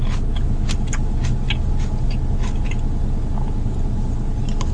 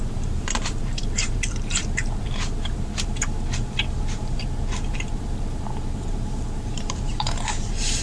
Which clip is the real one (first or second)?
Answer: first